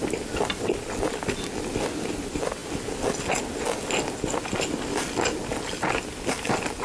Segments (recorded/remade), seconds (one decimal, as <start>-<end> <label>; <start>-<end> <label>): 0.0-6.8 recorded